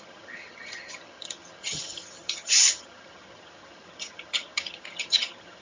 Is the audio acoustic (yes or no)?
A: no